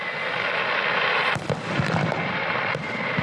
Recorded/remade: remade